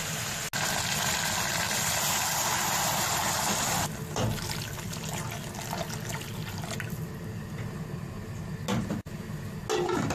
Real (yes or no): yes